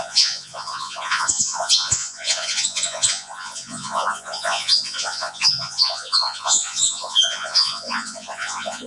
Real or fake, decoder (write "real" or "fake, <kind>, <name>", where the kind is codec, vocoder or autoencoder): fake, vocoder, Vocos